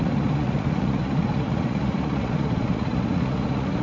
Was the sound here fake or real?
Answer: fake